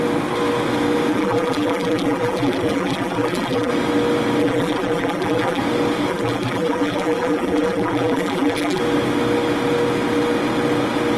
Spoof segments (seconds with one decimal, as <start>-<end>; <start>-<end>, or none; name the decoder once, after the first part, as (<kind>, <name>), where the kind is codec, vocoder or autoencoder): 1.1-3.7 (vocoder, BigVGAN v2); 4.4-5.6; 6.1-8.8